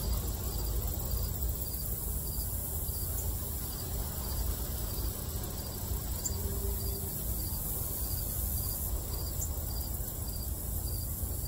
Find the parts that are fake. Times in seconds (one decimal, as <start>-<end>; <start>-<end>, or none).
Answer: none